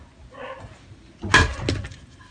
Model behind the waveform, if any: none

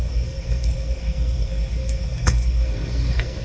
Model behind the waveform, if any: codec, SNAC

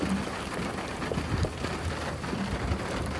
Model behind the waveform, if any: none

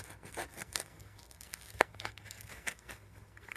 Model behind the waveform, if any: codec, SNAC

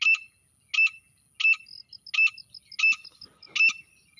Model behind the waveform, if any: none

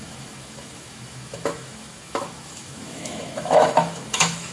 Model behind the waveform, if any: autoencoder, DAC-VAE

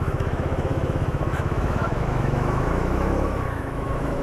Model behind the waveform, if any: autoencoder, DAC-VAE